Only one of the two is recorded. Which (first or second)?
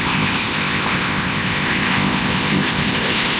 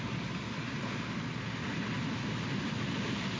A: second